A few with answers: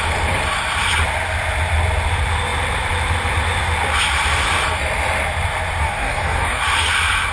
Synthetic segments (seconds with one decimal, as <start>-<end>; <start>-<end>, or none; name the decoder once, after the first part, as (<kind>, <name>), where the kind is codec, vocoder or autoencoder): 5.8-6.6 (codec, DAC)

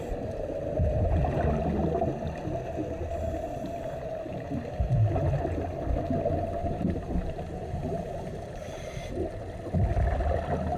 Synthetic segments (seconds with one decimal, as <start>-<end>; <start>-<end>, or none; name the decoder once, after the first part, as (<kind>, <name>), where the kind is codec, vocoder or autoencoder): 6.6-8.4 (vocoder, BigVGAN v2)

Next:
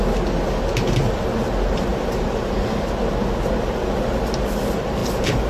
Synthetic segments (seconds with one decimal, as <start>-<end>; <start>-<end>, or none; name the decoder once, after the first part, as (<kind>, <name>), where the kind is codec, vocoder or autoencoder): 1.9-2.6 (vocoder, BigVGAN v2)